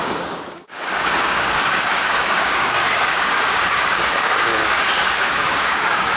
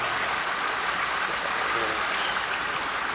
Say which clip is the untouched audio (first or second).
second